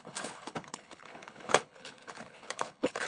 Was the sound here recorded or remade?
remade